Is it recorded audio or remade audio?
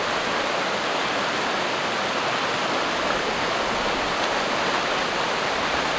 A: recorded